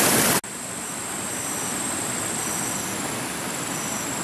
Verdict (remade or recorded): recorded